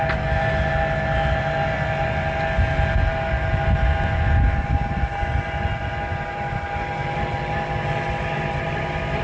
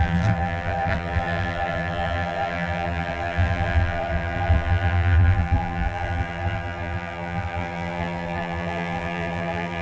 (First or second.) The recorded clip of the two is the first